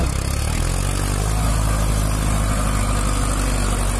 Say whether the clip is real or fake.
real